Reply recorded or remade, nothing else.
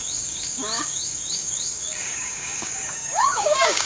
remade